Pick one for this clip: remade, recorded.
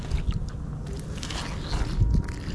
recorded